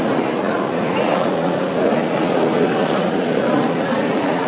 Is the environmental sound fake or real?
fake